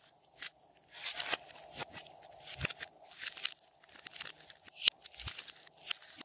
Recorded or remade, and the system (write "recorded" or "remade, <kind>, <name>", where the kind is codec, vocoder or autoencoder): recorded